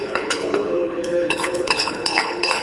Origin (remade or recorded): remade